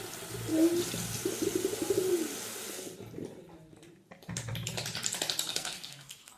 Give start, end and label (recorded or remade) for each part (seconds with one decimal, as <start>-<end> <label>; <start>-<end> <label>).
0.0-5.5 recorded; 5.5-6.4 remade